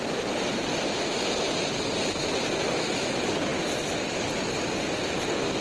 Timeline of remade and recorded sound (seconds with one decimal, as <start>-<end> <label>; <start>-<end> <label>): 0.0-5.6 recorded